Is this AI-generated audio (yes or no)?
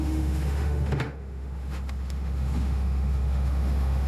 yes